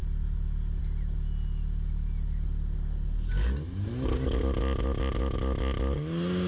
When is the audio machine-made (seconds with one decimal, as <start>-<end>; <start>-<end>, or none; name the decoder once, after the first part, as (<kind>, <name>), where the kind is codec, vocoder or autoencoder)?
none